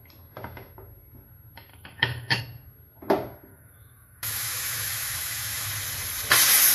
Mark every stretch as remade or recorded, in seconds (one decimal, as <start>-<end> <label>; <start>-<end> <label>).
0.0-1.7 recorded; 1.7-2.4 remade; 2.4-3.5 recorded; 3.5-5.7 remade; 5.7-6.7 recorded